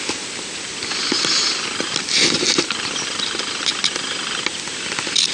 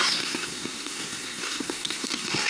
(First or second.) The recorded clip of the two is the first